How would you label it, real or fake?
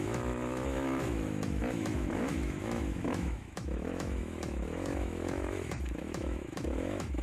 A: fake